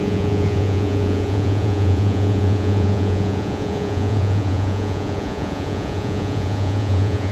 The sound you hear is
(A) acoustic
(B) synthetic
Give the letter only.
B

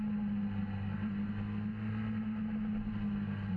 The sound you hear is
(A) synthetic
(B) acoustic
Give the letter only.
B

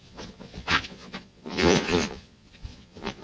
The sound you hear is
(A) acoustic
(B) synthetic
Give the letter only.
B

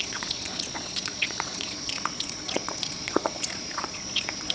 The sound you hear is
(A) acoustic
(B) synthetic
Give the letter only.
B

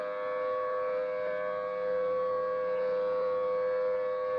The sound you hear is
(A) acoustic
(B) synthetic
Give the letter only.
A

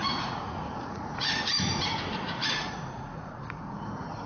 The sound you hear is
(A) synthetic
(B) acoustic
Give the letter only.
A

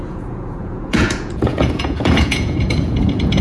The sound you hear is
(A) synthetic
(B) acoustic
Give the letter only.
A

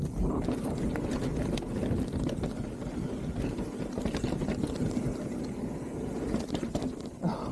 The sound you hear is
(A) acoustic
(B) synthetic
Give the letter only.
A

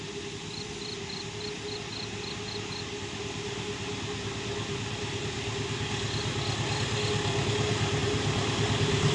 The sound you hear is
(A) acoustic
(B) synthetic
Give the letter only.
A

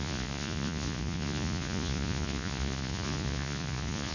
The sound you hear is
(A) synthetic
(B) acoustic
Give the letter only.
A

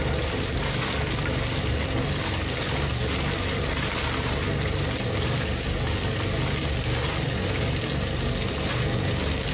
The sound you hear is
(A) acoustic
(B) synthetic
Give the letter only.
A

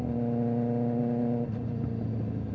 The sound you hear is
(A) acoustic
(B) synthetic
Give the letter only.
A